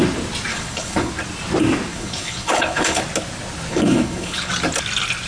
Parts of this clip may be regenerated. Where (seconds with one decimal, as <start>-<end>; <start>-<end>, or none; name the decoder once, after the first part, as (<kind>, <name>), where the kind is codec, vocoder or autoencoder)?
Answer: 0.5-1.1 (codec, HILCodec); 1.9-3.0; 3.7-4.5